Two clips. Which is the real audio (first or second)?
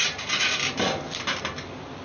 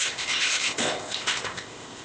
first